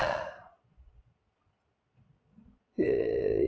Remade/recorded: remade